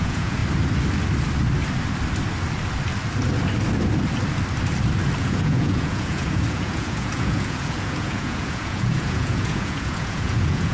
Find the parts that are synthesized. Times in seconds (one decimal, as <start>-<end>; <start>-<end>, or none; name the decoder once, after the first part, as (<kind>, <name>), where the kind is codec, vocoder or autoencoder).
0.0-0.4 (vocoder, Vocos); 5.2-10.7